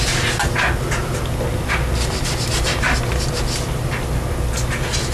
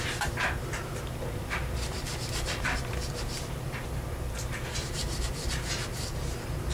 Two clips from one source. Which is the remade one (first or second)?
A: second